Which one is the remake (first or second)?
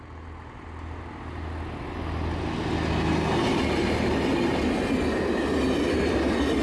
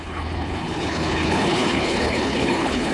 second